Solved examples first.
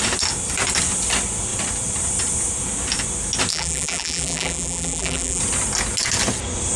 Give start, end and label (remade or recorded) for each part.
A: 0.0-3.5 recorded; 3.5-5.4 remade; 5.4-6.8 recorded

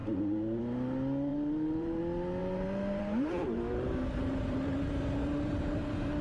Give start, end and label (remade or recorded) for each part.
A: 0.0-0.6 remade; 0.6-1.3 recorded; 1.3-2.0 remade; 2.0-2.4 recorded; 2.4-6.2 remade